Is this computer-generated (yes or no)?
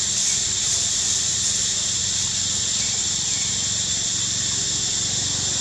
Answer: no